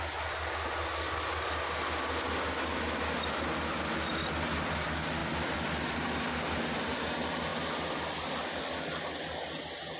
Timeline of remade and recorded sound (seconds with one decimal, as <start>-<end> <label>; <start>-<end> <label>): 0.0-5.2 recorded; 5.2-6.9 remade; 6.9-7.5 recorded; 7.5-8.6 remade; 8.6-10.0 recorded